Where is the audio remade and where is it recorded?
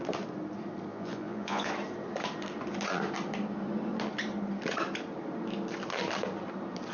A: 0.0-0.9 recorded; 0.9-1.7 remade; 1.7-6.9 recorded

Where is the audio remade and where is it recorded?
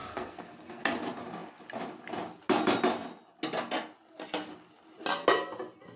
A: 0.0-0.8 remade; 0.8-6.0 recorded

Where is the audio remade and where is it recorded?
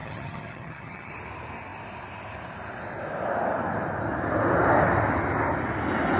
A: 0.0-1.1 remade; 1.1-6.2 recorded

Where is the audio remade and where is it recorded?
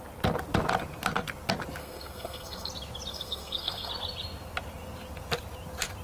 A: 0.0-1.8 recorded; 1.8-2.7 remade; 2.7-3.1 recorded; 3.1-3.9 remade; 3.9-6.0 recorded